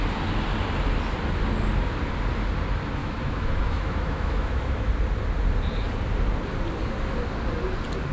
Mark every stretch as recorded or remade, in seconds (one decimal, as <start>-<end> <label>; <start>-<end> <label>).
0.0-3.0 recorded; 3.0-4.9 remade; 4.9-8.1 recorded